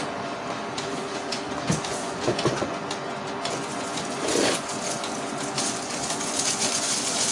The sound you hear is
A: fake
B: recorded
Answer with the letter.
A